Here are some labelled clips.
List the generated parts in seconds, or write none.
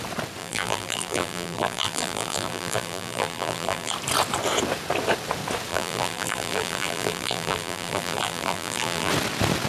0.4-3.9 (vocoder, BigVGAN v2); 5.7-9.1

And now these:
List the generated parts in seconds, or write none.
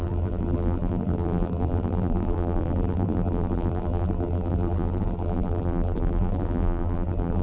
0.0-7.4 (vocoder, BigVGAN v2)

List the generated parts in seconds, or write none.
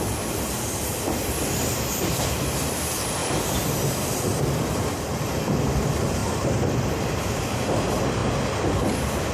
0.0-8.2 (vocoder, BigVGAN v2)